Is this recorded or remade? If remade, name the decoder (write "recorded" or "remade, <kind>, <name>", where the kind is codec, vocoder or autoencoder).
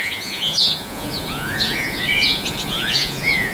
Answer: remade, vocoder, Vocos